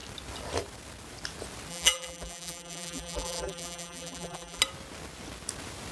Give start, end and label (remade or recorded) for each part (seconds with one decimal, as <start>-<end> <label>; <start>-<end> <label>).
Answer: 0.0-1.7 recorded; 1.7-4.6 remade; 4.6-5.9 recorded